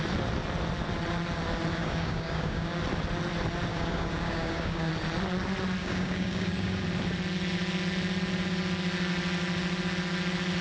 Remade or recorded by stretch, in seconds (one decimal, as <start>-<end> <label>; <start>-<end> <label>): 0.0-1.7 recorded; 1.7-2.8 remade; 2.8-3.7 recorded; 3.7-4.9 remade; 4.9-5.8 recorded; 5.8-6.8 remade; 6.8-10.6 recorded